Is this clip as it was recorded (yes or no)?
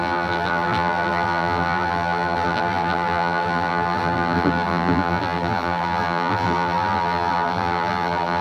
no